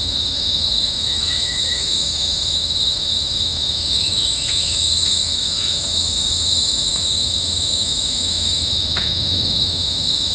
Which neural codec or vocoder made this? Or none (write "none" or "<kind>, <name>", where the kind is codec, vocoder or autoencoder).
autoencoder, DAC-VAE